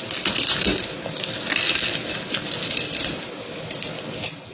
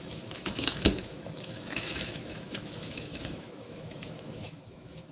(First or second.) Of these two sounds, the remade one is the second